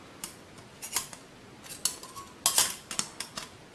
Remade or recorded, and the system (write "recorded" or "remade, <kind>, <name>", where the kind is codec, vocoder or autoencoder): recorded